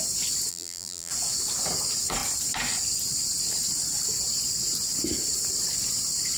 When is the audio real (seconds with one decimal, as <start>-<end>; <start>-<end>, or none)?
0.0-0.5; 1.1-6.4